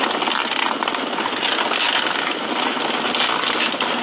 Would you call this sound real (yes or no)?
yes